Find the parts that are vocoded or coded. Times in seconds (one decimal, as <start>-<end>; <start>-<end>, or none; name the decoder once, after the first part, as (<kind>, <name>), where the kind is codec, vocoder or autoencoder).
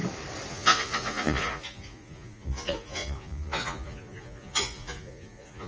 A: 0.5-5.7 (vocoder, Vocos)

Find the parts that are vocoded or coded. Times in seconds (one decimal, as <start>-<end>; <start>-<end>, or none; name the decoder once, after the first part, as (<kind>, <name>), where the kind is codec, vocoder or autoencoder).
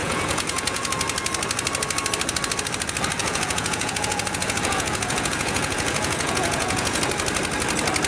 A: 0.0-0.9 (vocoder, Vocos); 3.2-7.0